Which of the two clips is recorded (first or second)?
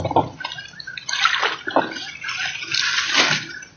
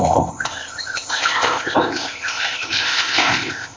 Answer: first